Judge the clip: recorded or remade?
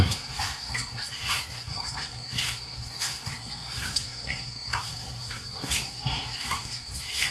remade